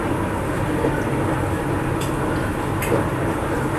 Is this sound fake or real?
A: real